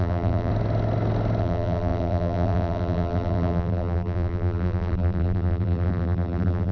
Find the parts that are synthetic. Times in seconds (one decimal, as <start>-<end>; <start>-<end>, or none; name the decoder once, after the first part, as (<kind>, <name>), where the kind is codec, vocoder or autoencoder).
0.0-0.5 (vocoder, BigVGAN v2); 1.4-6.7